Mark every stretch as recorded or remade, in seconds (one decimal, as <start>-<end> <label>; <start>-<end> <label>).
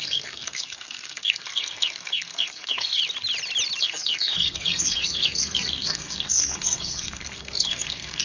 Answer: 0.0-3.0 remade; 3.0-3.8 recorded; 3.8-8.2 remade